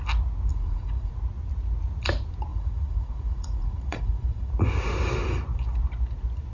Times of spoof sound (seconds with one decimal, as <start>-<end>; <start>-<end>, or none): 0.5-1.1; 2.5-4.5